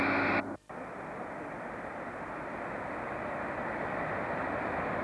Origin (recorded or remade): recorded